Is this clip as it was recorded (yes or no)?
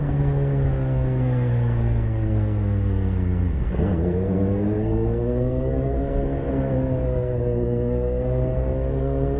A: no